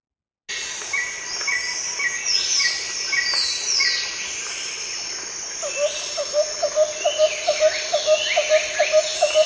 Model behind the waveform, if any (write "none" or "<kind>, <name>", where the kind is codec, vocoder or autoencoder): none